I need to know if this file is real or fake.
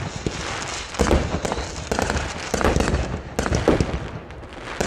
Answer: real